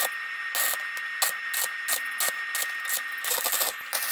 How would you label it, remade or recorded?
recorded